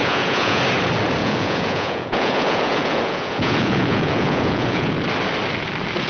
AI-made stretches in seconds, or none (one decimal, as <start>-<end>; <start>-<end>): 0.0-0.6; 1.2-4.9